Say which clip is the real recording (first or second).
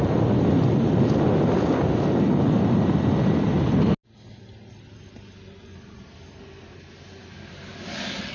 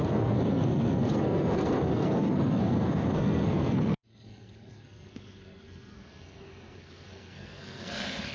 first